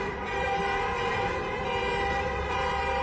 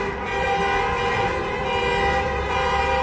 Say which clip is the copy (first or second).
first